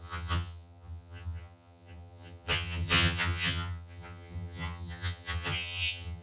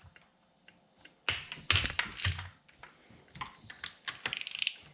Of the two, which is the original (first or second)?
second